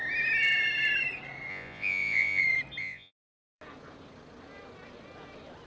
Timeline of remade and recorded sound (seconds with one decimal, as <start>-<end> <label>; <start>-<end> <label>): 0.0-1.5 recorded; 1.5-2.4 remade; 2.4-2.8 recorded; 2.8-3.6 remade; 3.6-5.7 recorded